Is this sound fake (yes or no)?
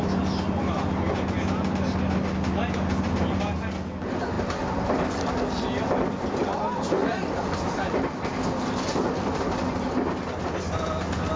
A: no